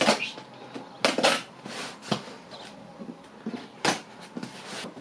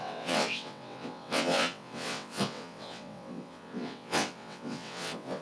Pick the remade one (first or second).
second